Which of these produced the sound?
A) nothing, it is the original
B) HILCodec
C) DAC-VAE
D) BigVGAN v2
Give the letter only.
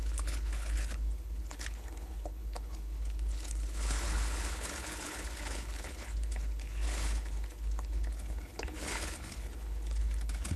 B